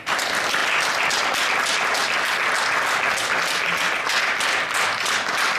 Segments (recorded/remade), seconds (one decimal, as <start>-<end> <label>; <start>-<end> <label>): 0.0-5.6 recorded